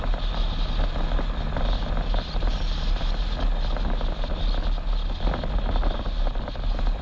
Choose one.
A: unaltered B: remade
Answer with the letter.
A